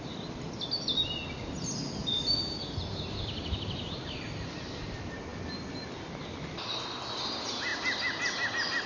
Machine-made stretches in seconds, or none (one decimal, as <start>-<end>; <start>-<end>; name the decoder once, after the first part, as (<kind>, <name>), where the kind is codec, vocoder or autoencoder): none